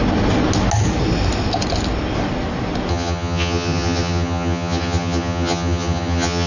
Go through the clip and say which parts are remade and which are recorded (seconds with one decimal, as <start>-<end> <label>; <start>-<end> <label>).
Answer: 0.0-2.9 recorded; 2.9-6.5 remade